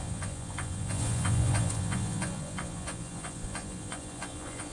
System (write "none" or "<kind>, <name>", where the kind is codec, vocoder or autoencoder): vocoder, Vocos